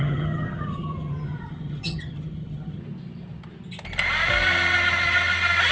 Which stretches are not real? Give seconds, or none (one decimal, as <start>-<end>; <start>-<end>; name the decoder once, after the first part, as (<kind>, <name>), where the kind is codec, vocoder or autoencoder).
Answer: 0.0-2.8 (vocoder, HiFi-GAN)